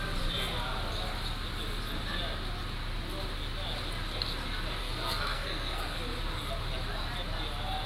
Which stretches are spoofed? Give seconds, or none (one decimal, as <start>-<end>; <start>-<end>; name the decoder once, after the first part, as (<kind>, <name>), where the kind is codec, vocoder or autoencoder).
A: 4.8-6.0 (codec, SNAC)